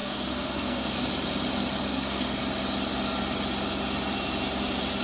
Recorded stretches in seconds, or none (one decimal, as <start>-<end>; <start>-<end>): 1.1-1.8; 2.4-5.0